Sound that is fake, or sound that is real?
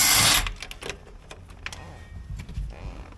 real